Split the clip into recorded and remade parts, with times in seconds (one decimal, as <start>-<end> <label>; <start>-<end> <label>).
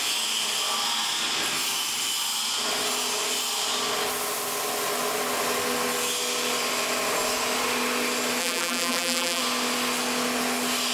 0.0-8.4 recorded; 8.4-9.4 remade; 9.4-10.9 recorded